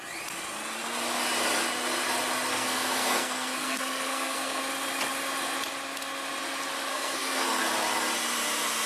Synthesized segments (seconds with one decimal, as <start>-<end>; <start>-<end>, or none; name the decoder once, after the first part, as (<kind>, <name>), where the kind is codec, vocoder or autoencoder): 2.5-4.6 (codec, SNAC); 6.9-7.6